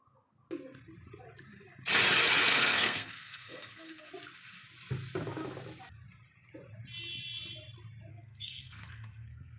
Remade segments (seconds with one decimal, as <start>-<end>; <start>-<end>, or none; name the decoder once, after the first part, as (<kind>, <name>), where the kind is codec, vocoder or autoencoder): 2.5-4.1 (codec, SNAC); 8.1-9.6